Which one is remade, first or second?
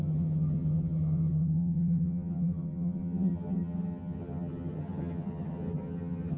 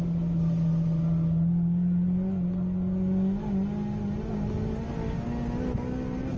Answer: first